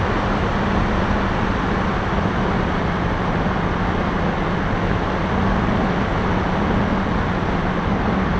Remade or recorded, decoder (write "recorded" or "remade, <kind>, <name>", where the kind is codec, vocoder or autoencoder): recorded